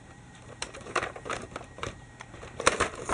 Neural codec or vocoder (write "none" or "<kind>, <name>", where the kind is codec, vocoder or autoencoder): vocoder, BigVGAN v2